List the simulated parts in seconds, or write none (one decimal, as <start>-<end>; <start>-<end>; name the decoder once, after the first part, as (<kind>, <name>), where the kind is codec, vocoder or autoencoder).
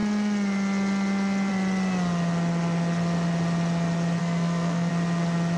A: 4.2-4.9 (codec, SNAC)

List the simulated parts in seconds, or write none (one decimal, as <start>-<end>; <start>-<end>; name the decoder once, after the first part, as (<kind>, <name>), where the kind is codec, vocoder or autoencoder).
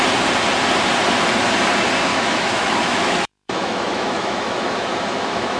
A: 2.1-5.6 (autoencoder, DAC-VAE)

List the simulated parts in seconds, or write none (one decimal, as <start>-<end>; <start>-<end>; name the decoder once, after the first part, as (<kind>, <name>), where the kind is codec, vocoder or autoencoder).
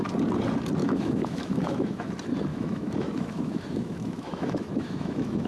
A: 0.8-2.1 (autoencoder, DAC-VAE); 2.5-5.5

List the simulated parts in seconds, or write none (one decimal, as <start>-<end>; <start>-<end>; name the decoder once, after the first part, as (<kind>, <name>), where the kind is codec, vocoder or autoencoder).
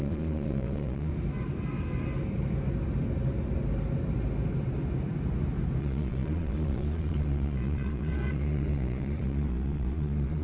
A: 0.0-1.1 (vocoder, Vocos); 5.8-10.4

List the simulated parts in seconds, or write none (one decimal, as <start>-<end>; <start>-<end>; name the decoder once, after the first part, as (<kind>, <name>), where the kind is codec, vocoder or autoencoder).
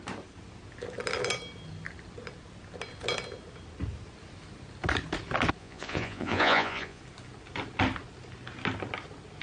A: 5.6-7.0 (vocoder, Vocos)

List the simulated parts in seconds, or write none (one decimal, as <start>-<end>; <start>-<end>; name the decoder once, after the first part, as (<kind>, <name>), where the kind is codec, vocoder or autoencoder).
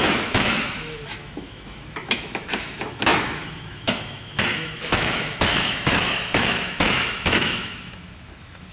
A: 0.0-8.7 (autoencoder, DAC-VAE)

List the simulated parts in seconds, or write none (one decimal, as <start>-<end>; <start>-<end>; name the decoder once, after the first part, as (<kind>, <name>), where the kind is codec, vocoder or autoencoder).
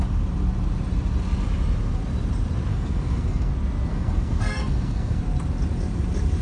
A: 2.7-3.5 (codec, SNAC); 3.9-5.2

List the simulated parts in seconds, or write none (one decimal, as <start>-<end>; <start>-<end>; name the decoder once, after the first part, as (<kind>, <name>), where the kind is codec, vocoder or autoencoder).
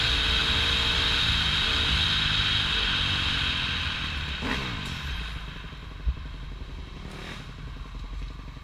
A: none